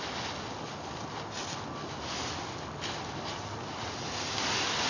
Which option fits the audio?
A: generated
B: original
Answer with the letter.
B